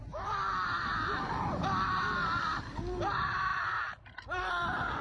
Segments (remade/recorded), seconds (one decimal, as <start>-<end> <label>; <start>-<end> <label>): 0.0-5.0 recorded